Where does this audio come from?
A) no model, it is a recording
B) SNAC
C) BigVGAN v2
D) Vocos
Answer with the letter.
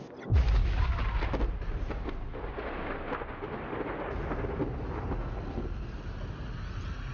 A